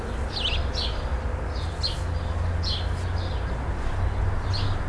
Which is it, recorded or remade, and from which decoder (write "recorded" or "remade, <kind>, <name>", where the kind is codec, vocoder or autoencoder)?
recorded